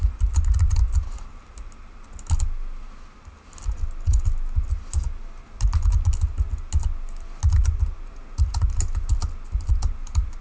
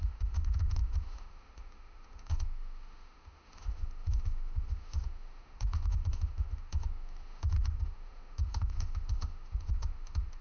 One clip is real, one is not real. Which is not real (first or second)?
second